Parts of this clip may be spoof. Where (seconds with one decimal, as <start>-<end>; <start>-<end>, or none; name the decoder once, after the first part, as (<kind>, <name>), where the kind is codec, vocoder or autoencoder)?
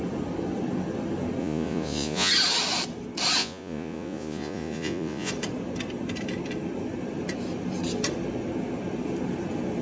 1.4-2.3 (vocoder, Vocos); 3.4-5.3